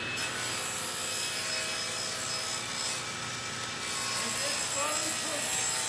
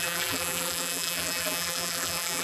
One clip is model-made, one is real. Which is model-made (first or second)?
second